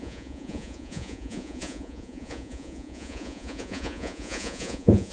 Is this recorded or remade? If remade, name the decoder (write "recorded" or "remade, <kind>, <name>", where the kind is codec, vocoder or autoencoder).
remade, vocoder, Vocos